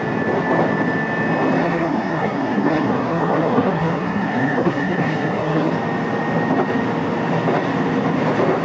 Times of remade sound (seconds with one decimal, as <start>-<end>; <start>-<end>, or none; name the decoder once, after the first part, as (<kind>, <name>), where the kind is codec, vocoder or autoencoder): 1.6-5.7 (codec, SNAC)